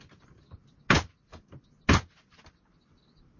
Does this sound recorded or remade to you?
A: recorded